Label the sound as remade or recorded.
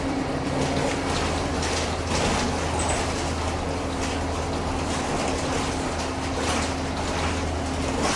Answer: recorded